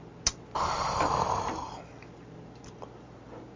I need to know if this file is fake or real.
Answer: real